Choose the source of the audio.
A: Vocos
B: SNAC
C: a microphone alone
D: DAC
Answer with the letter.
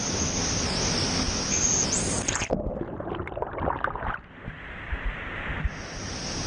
C